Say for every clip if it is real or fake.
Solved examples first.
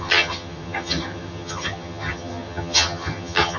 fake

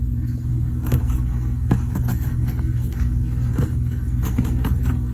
fake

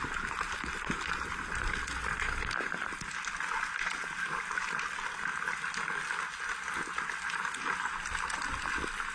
real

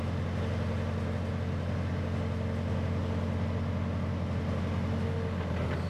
real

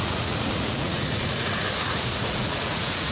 fake